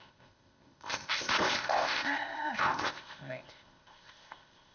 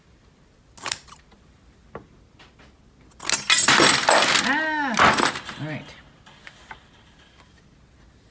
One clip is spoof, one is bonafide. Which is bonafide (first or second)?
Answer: second